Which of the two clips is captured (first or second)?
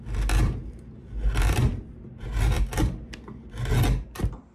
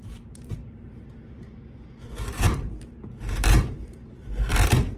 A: first